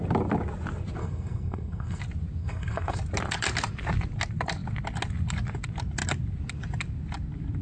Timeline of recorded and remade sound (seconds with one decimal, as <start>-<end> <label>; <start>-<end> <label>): 0.0-1.0 recorded; 1.0-2.0 remade; 2.0-2.4 recorded; 2.4-3.0 remade; 3.0-7.6 recorded